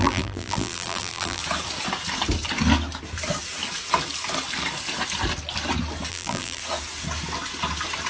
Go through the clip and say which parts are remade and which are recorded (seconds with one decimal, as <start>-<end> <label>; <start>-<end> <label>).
0.0-1.4 remade; 1.4-6.1 recorded; 6.1-6.6 remade; 6.6-8.1 recorded